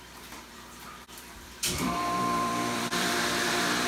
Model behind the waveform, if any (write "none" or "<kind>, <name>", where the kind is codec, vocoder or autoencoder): vocoder, BigVGAN v2